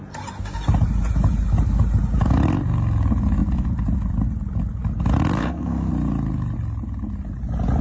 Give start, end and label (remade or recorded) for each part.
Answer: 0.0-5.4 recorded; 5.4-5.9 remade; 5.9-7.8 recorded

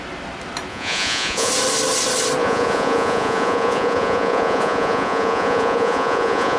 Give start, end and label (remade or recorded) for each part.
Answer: 0.0-0.7 recorded; 0.7-1.5 remade; 1.5-2.4 recorded; 2.4-6.6 remade

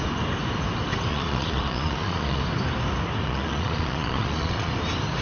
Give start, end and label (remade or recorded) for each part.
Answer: 0.0-1.1 recorded; 1.1-2.4 remade; 2.4-3.2 recorded; 3.2-4.7 remade; 4.7-5.2 recorded

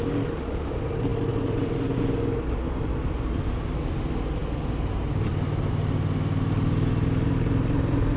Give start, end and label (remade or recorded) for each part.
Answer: 0.0-8.2 recorded

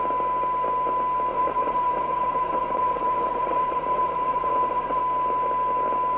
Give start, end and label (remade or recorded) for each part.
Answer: 0.0-1.3 recorded; 1.3-5.0 remade; 5.0-6.2 recorded

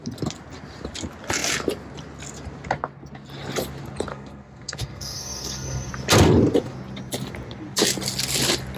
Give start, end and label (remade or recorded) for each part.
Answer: 0.0-4.1 recorded; 4.1-5.9 remade; 5.9-8.8 recorded